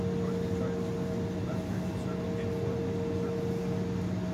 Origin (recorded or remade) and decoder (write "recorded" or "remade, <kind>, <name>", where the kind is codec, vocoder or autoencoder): recorded